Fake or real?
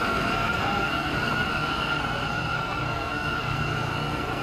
fake